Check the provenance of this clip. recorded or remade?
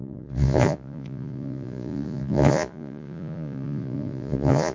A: remade